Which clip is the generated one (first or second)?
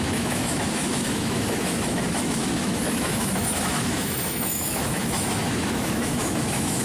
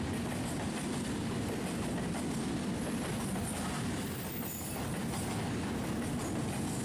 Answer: first